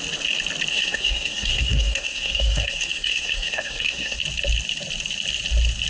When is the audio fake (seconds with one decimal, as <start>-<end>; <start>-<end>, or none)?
0.7-4.2